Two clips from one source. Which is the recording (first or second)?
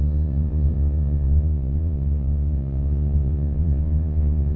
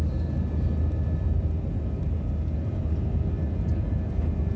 second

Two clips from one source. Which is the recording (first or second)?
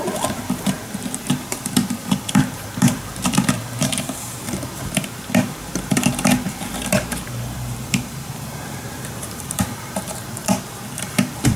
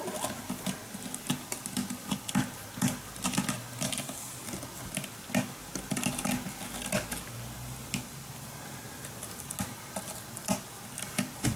second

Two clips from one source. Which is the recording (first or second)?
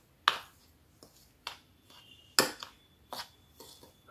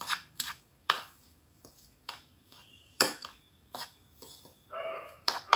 first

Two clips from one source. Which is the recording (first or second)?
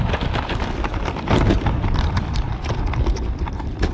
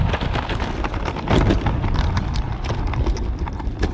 second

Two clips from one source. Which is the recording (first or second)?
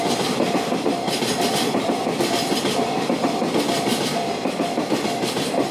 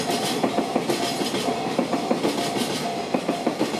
second